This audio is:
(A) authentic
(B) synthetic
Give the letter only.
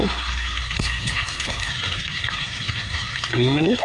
B